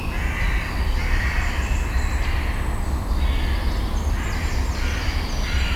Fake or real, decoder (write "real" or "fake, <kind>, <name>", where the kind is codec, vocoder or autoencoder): real